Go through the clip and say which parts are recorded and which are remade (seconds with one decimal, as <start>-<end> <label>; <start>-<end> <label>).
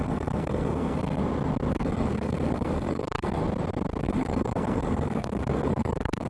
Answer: 0.0-1.2 remade; 1.2-1.7 recorded; 1.7-3.4 remade; 3.4-4.0 recorded; 4.0-6.3 remade